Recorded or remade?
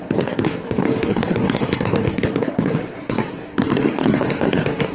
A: remade